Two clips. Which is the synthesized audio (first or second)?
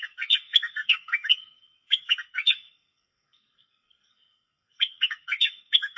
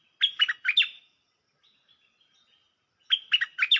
first